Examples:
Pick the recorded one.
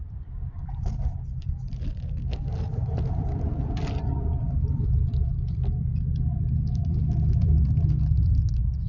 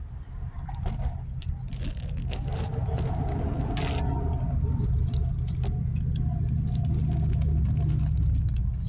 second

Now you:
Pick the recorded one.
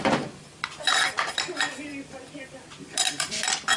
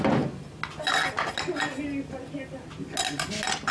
second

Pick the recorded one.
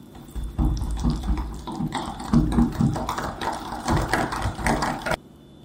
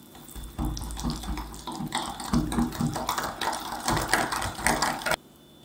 second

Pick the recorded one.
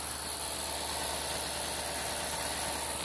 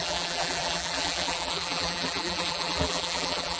first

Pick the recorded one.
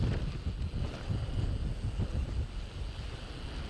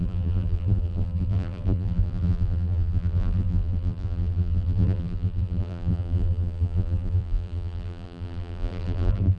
first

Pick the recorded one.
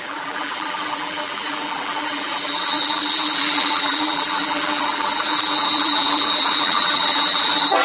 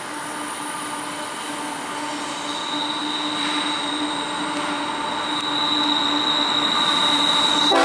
second